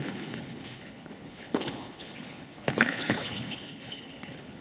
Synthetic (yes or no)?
yes